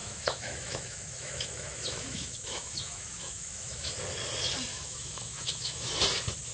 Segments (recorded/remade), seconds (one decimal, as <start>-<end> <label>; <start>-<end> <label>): 0.0-3.9 remade; 3.9-4.7 recorded; 4.7-5.9 remade; 5.9-6.5 recorded